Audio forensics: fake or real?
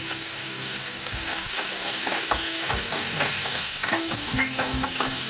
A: fake